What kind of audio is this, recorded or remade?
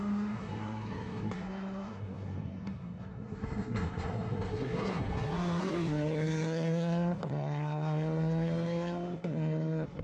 remade